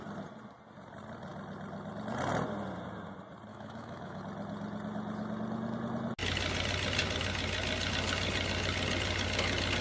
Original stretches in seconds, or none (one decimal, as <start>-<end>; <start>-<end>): 0.0-3.5; 4.2-9.8